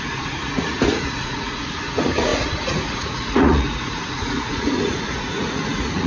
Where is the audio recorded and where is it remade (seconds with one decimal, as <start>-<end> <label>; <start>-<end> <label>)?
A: 0.0-6.1 remade